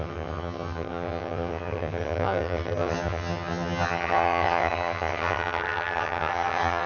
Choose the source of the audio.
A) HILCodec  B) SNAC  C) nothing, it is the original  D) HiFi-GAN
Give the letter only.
D